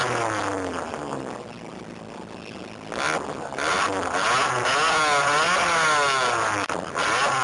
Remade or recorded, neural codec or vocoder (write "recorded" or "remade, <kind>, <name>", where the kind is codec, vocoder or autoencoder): recorded